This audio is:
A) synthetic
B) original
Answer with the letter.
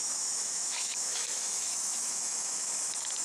A